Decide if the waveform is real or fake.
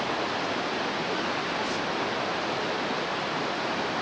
real